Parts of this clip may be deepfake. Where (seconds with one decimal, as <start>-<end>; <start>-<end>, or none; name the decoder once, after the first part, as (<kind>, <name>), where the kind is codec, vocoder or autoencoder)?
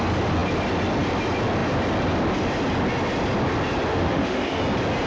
3.9-4.6 (autoencoder, DAC-VAE)